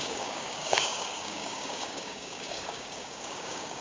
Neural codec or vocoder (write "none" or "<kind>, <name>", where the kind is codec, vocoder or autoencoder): codec, DAC